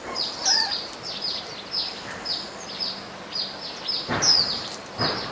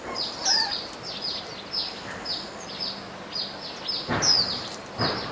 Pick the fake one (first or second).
first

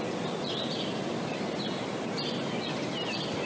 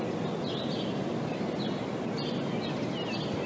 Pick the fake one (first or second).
first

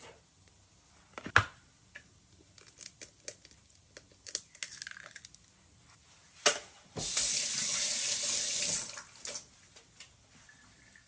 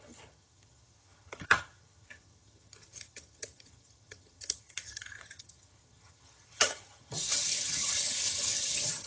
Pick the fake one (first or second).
second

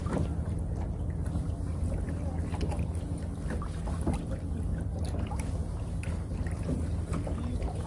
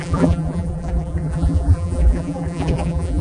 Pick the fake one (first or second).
second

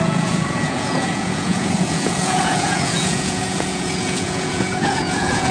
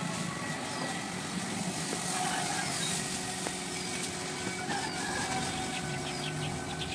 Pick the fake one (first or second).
first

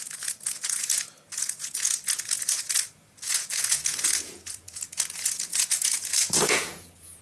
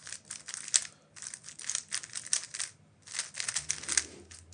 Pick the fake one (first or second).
first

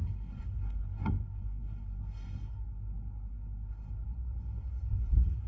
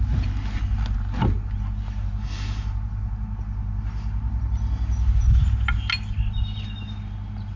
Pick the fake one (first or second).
first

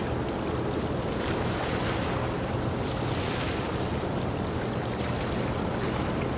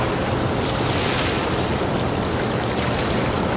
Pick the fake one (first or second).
first